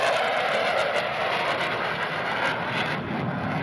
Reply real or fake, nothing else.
real